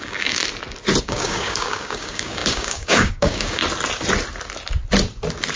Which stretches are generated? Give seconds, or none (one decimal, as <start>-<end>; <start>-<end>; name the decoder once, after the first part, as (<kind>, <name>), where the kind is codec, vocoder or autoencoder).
0.0-0.4 (codec, DAC); 1.0-3.6

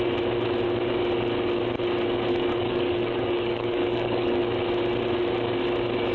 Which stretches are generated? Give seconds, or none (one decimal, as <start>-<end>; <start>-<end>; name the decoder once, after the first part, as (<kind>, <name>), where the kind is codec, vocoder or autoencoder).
2.3-4.4 (codec, DAC)

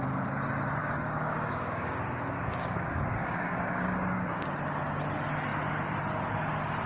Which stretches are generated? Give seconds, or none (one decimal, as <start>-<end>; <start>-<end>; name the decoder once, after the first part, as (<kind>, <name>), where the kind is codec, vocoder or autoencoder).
0.8-4.5 (codec, DAC)